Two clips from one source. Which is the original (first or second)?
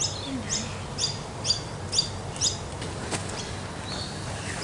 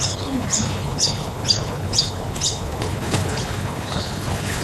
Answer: first